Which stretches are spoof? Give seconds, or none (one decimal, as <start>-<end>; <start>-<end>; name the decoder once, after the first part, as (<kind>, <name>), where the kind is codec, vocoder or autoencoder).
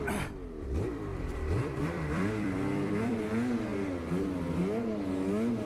1.1-3.2 (vocoder, BigVGAN v2)